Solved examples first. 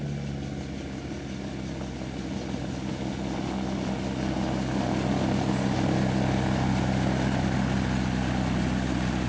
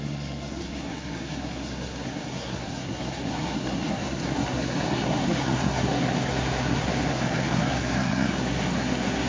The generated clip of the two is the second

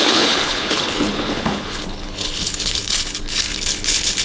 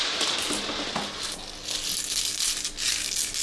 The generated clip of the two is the first